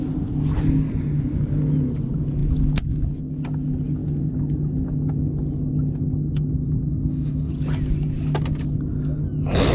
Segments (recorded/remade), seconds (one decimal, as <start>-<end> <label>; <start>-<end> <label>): 0.0-6.9 recorded; 6.9-7.5 remade; 7.5-9.7 recorded